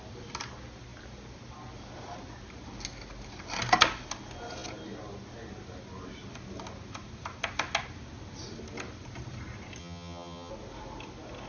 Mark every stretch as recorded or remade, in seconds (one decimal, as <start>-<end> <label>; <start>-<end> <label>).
0.0-9.8 recorded; 9.8-10.5 remade; 10.5-11.5 recorded